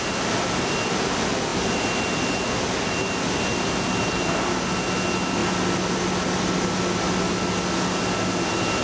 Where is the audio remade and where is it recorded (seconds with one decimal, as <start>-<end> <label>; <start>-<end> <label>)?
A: 0.0-8.8 recorded